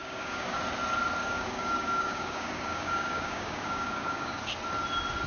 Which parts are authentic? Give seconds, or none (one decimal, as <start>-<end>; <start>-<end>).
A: 0.6-1.2; 4.4-5.3